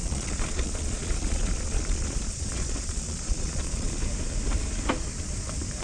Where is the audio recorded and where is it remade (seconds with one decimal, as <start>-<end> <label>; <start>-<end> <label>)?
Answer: 0.0-4.0 remade; 4.0-5.8 recorded

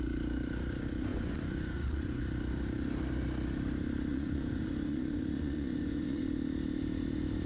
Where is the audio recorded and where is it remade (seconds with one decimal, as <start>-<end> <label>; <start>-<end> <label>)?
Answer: 0.0-1.1 recorded; 1.1-2.2 remade; 2.2-4.1 recorded; 4.1-6.2 remade; 6.2-7.5 recorded

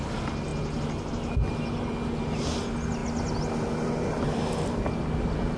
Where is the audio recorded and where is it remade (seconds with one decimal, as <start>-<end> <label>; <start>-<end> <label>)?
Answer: 0.0-5.6 recorded

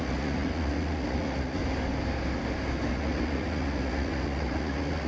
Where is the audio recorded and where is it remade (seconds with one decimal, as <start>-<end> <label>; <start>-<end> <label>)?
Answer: 0.0-1.6 remade; 1.6-2.9 recorded; 2.9-5.1 remade

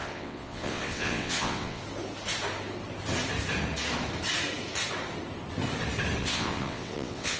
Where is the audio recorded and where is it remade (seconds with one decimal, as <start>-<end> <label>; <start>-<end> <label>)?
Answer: 0.0-1.8 remade; 1.8-6.2 recorded; 6.2-7.4 remade

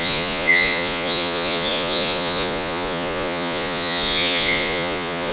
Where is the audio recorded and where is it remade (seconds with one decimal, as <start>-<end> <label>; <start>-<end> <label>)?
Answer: 0.0-5.3 remade